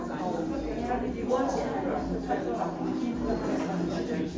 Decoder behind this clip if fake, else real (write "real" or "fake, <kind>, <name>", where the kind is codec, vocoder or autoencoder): real